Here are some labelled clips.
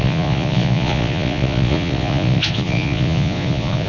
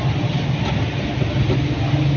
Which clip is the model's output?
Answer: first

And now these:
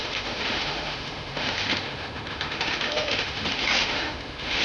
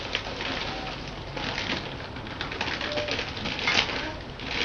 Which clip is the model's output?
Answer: first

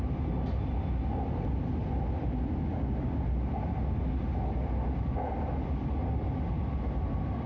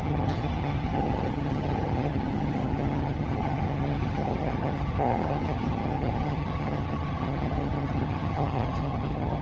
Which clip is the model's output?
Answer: second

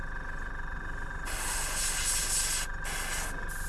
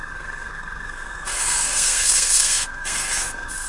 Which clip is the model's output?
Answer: second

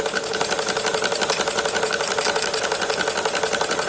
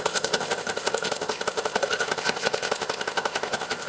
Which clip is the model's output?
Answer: second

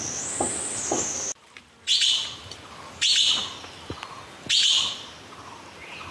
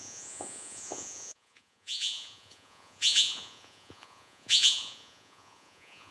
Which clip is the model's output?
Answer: second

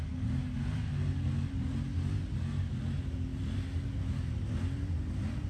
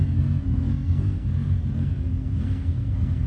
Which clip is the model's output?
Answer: second